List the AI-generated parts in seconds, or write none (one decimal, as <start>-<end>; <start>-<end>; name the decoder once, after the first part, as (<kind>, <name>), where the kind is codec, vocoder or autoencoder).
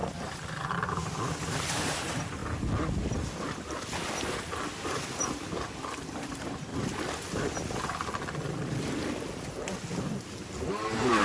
0.6-2.4 (vocoder, BigVGAN v2); 6.0-6.7; 10.7-11.2